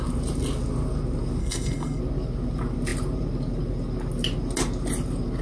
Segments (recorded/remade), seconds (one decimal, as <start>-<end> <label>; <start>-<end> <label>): 0.0-1.4 recorded; 1.4-2.0 remade; 2.0-5.4 recorded